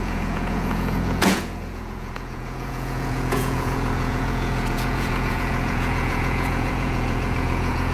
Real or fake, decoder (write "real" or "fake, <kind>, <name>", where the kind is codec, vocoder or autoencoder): fake, vocoder, Vocos